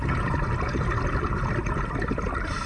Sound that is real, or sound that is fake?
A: real